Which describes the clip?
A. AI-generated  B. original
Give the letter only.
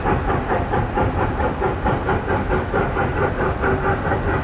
B